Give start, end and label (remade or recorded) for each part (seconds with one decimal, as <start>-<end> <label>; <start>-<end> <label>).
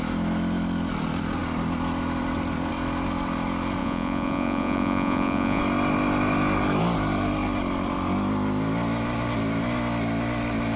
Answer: 0.0-3.8 recorded; 3.8-5.6 remade; 5.6-10.8 recorded